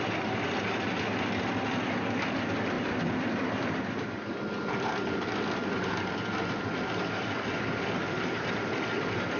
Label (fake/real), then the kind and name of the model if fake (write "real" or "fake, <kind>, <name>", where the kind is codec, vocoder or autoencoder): real